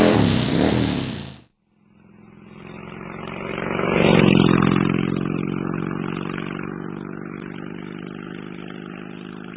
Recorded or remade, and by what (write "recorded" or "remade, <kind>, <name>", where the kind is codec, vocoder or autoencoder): recorded